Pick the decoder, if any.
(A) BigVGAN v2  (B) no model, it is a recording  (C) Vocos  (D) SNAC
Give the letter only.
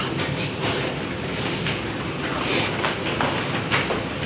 B